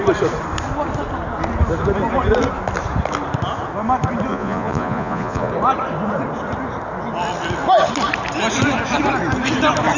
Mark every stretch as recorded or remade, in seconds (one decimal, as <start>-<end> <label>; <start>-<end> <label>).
0.0-4.3 recorded; 4.3-5.5 remade; 5.5-10.0 recorded